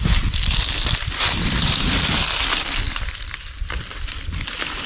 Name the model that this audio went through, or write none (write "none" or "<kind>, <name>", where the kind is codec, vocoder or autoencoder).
vocoder, BigVGAN v2